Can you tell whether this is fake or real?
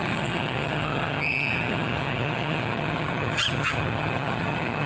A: fake